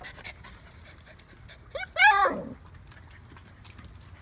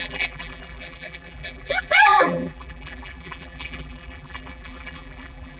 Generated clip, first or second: second